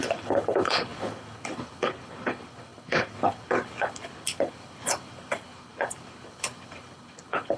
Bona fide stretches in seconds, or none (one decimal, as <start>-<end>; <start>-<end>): none